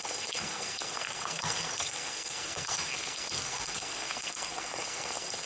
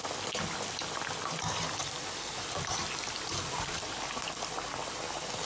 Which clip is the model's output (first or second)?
first